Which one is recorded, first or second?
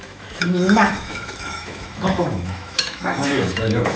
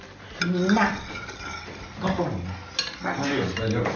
second